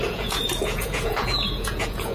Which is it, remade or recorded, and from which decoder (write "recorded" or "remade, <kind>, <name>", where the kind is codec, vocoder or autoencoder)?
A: remade, vocoder, Vocos